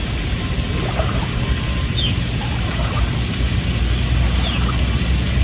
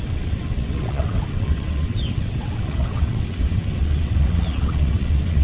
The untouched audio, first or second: first